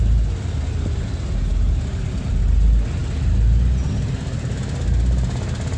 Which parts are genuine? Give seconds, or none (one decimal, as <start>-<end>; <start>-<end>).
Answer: 0.0-5.8